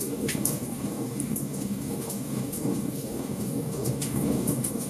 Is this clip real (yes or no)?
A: no